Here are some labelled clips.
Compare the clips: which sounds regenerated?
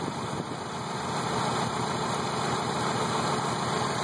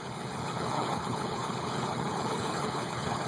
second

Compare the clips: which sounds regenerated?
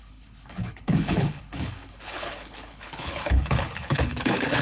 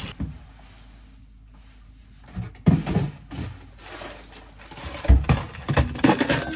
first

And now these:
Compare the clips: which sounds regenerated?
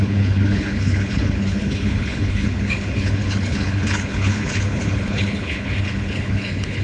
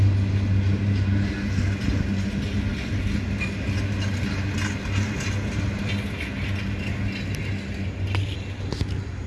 first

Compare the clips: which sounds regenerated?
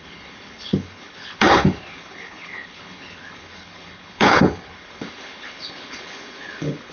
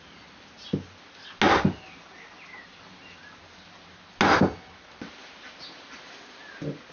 first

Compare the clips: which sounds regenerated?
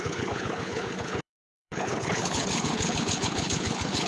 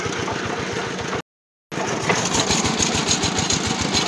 first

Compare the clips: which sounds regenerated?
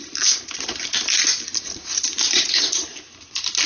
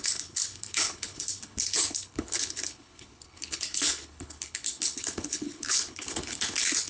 second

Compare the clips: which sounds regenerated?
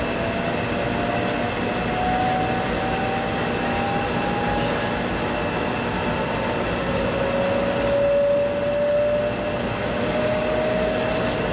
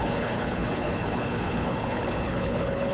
second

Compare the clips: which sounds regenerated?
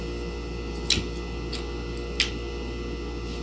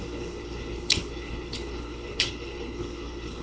second